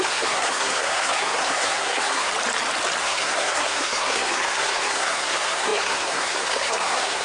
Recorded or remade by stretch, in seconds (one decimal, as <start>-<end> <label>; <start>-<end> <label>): 0.0-2.3 remade; 2.3-3.0 recorded; 3.0-7.2 remade

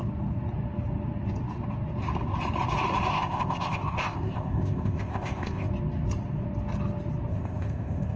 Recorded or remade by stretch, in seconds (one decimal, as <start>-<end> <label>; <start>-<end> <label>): 0.0-3.1 recorded; 3.1-5.7 remade; 5.7-7.3 recorded; 7.3-8.2 remade

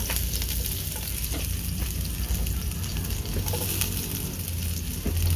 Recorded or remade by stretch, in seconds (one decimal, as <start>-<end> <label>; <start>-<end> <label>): 0.0-5.4 recorded

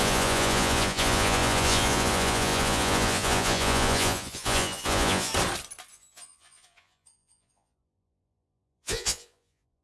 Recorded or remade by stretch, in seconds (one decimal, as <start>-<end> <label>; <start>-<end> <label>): 0.0-5.3 remade; 5.3-5.9 recorded; 5.9-9.8 remade

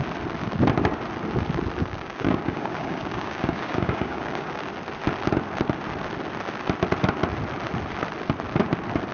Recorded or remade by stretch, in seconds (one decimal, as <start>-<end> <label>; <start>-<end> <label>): 0.0-1.8 recorded; 1.8-4.5 remade; 4.5-9.1 recorded

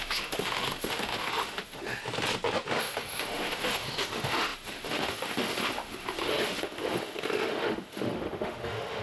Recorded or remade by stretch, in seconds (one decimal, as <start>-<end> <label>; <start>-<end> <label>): 0.0-2.0 remade; 2.0-2.8 recorded; 2.8-9.0 remade

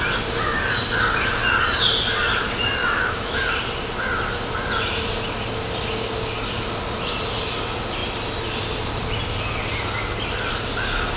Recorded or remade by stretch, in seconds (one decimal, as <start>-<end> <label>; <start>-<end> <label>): 0.0-2.8 recorded; 2.8-3.5 remade; 3.5-11.2 recorded